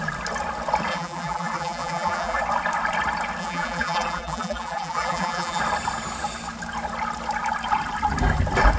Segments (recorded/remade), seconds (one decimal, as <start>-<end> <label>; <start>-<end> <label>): 0.0-0.9 recorded; 0.9-2.4 remade; 2.4-3.4 recorded; 3.4-5.6 remade; 5.6-8.8 recorded